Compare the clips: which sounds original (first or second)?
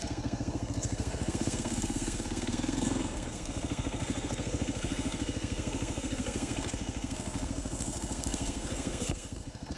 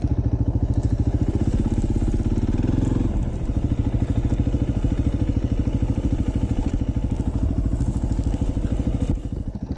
second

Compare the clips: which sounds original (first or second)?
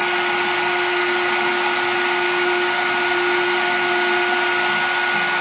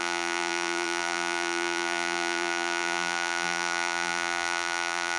first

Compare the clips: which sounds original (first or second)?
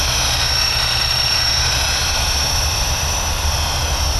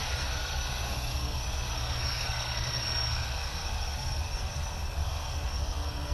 first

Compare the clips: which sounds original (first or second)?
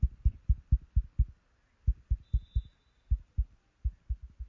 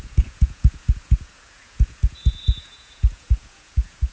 first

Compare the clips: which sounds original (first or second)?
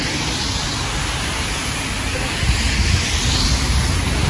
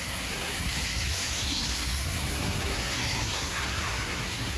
first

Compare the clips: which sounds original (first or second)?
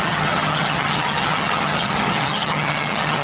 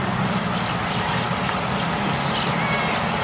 second